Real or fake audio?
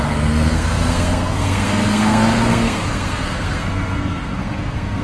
fake